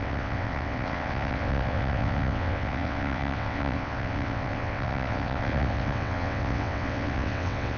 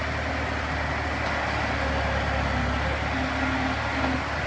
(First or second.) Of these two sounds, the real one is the second